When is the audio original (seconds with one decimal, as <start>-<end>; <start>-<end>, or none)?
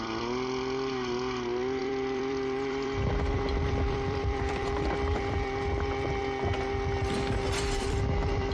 6.2-7.8